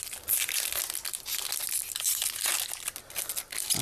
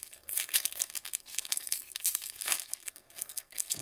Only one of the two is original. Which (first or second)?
first